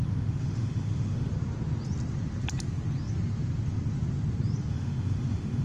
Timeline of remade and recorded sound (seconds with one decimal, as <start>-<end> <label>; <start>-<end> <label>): 0.0-1.3 remade; 1.3-4.7 recorded; 4.7-5.6 remade